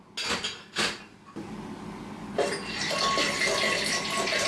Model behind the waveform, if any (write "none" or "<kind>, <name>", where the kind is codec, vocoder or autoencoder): none